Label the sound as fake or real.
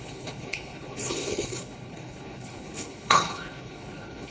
fake